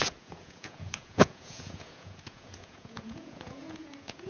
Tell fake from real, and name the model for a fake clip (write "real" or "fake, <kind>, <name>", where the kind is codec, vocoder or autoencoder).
fake, vocoder, Vocos